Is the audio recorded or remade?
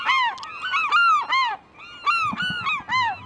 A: recorded